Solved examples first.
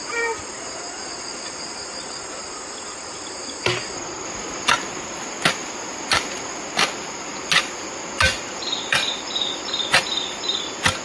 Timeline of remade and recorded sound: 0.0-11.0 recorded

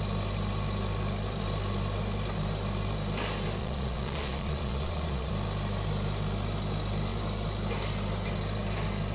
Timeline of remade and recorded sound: 0.0-3.6 recorded; 3.6-5.3 remade; 5.3-9.1 recorded

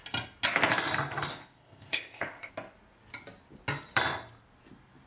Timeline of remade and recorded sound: 0.0-1.3 recorded; 1.3-2.5 remade; 2.5-5.1 recorded